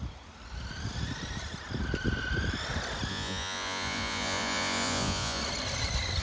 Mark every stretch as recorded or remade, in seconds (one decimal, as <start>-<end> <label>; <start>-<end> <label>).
0.0-3.1 recorded; 3.1-5.4 remade; 5.4-6.2 recorded

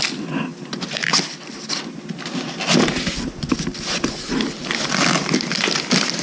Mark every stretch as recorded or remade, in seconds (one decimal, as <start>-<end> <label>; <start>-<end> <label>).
0.0-6.2 recorded

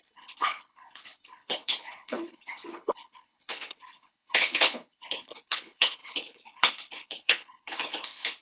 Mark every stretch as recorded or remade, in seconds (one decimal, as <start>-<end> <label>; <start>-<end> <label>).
0.0-8.4 remade

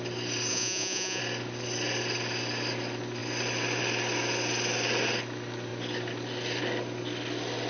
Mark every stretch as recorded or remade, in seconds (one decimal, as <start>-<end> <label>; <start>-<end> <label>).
0.0-0.5 recorded; 0.5-1.2 remade; 1.2-7.7 recorded

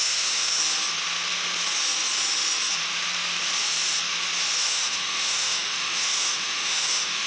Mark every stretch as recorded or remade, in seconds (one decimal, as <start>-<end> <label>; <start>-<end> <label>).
0.0-0.6 remade; 0.6-4.6 recorded; 4.6-7.3 remade

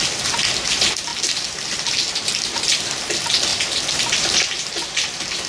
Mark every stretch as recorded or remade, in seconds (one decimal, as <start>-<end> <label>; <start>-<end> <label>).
0.0-5.5 recorded

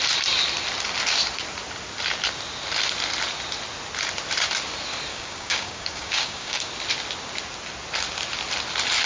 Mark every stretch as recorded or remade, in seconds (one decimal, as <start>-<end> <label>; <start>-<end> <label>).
0.0-5.1 recorded; 5.1-6.7 remade; 6.7-9.1 recorded

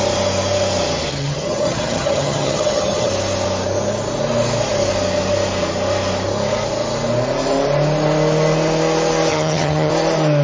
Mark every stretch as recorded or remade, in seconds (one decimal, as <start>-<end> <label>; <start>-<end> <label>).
0.0-1.1 recorded; 1.1-3.1 remade; 3.1-9.3 recorded; 9.3-9.9 remade; 9.9-10.4 recorded